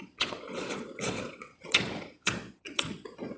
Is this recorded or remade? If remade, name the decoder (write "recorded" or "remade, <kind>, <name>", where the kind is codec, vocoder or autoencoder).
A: remade, vocoder, Vocos